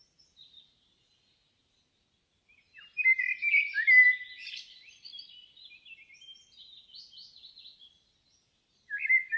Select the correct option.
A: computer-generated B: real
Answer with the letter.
B